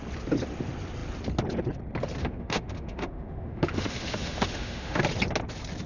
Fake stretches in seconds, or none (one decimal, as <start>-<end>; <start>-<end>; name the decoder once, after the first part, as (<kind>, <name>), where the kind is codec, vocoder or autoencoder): 2.2-5.0 (autoencoder, DAC-VAE)